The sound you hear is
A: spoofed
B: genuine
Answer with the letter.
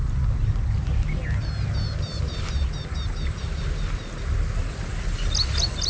B